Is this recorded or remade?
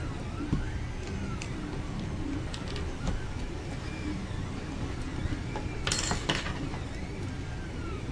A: remade